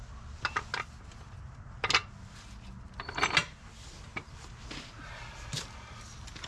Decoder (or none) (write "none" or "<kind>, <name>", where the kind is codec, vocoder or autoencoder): none